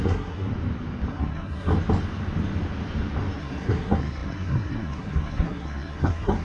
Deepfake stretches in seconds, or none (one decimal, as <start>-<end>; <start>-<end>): 0.0-0.5; 1.1-1.7; 3.4-6.4